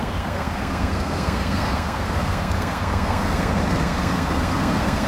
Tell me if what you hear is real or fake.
fake